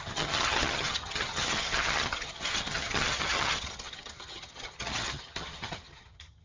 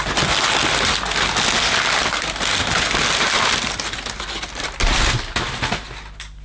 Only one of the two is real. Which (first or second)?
second